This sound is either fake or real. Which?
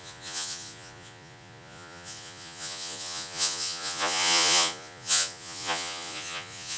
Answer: fake